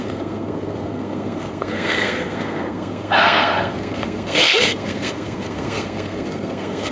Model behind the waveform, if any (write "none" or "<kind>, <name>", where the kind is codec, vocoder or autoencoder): codec, SNAC